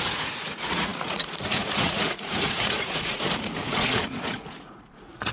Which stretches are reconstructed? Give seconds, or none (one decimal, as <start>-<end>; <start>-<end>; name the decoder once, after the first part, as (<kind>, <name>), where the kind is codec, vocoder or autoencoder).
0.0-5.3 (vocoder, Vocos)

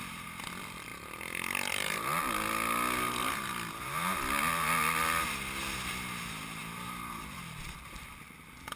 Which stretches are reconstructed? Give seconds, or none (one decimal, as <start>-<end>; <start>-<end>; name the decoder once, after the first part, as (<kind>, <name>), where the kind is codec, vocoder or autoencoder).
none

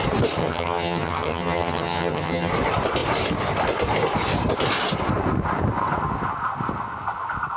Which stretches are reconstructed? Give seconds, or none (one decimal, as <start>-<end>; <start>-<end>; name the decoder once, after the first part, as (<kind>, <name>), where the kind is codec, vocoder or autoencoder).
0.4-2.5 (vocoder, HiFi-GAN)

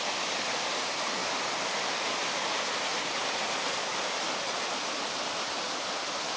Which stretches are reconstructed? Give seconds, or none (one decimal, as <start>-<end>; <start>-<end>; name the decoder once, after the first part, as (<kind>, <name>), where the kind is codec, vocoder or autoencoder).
none

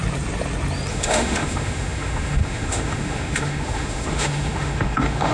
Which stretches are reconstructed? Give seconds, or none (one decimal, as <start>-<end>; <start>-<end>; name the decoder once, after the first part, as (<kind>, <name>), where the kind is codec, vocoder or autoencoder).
0.9-5.3 (autoencoder, DAC-VAE)

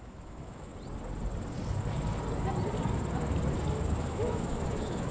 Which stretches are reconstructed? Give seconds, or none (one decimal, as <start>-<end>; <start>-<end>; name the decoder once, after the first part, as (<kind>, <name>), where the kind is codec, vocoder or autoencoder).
0.0-0.7 (autoencoder, DAC-VAE); 3.8-5.1

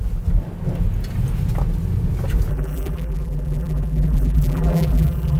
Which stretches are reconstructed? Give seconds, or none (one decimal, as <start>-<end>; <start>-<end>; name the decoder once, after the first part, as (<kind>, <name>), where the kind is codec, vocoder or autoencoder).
2.5-5.4 (vocoder, BigVGAN v2)

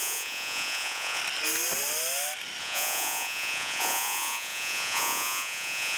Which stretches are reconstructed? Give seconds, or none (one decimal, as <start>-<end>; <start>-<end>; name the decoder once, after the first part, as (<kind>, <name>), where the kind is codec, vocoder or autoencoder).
0.0-1.2 (vocoder, Vocos); 2.6-6.0